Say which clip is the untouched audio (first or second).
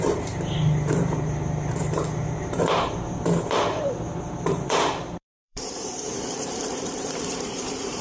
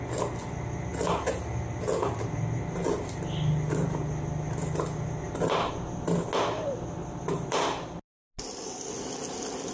second